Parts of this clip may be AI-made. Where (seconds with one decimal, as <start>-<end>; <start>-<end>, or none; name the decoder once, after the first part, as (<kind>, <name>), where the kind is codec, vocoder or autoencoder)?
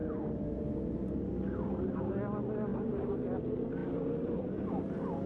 0.0-0.6 (vocoder, BigVGAN v2)